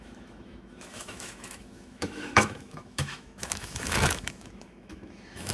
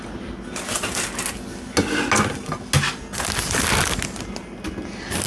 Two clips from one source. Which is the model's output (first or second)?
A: first